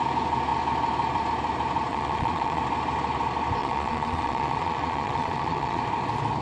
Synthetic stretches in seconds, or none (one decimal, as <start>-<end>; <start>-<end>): 1.9-2.6; 3.6-5.8